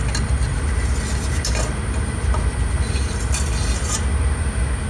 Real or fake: real